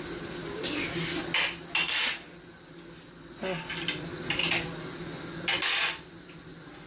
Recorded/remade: recorded